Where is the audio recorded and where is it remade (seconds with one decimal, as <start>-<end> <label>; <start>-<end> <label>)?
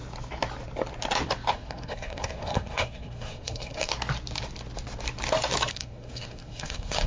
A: 0.0-1.5 recorded; 1.5-3.9 remade; 3.9-5.7 recorded; 5.7-7.1 remade